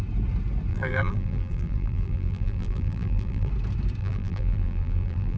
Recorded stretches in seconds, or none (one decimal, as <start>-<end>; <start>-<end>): 0.0-0.7; 3.5-4.0